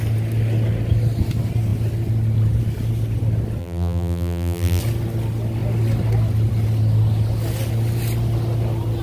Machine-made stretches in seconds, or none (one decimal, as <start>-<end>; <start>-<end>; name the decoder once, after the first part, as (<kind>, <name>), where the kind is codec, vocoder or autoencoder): 3.6-4.8 (vocoder, BigVGAN v2)